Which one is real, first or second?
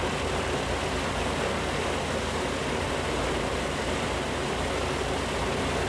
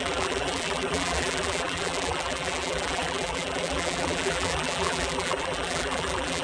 first